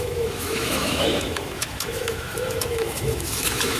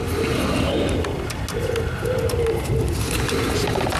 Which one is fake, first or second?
first